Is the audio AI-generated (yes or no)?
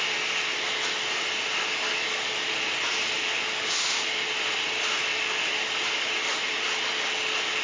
no